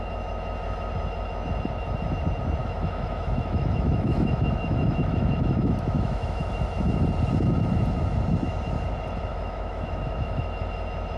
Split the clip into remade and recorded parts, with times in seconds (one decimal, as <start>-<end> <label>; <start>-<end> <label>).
0.0-2.6 recorded; 2.6-6.5 remade; 6.5-9.3 recorded; 9.3-10.4 remade; 10.4-11.2 recorded